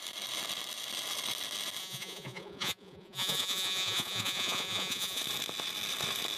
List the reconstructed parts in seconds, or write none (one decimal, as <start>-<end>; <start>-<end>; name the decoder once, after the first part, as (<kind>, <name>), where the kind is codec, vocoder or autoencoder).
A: 1.8-5.2 (vocoder, Vocos)